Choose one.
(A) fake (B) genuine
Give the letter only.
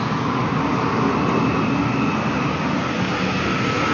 B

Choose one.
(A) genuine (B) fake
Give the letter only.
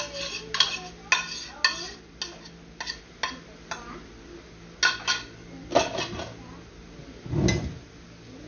A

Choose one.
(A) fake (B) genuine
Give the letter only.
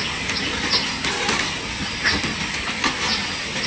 B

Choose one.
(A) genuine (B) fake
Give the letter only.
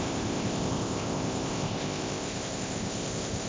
B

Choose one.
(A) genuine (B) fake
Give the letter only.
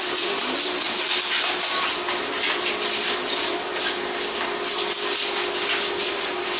A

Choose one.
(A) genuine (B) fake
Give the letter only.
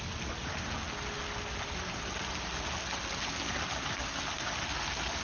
A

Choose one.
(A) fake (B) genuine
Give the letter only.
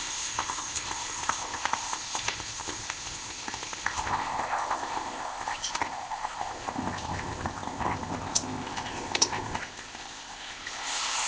A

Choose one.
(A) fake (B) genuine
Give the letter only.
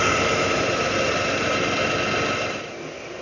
B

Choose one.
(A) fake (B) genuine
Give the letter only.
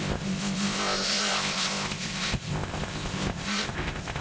A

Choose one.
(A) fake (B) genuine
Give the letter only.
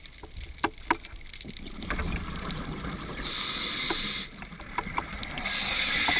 B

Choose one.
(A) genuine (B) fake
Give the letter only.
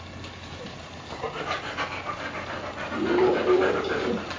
A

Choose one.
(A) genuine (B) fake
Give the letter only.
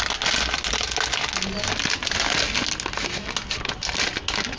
A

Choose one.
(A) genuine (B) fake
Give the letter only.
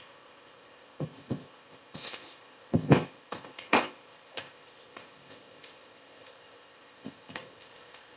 B